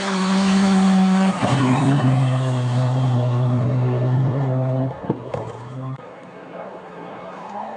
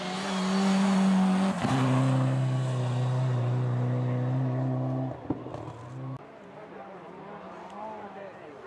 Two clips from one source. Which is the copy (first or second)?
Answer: first